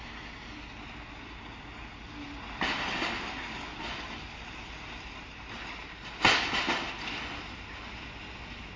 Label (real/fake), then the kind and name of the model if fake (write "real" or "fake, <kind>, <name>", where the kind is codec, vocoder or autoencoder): real